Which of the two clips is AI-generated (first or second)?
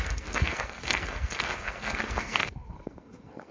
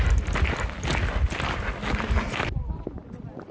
first